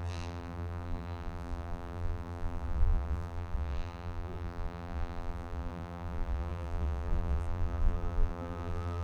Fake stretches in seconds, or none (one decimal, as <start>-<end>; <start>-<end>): 0.0-9.0